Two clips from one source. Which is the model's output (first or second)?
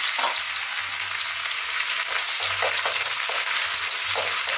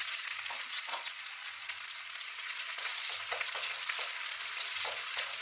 second